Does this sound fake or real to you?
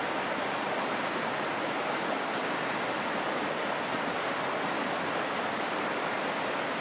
real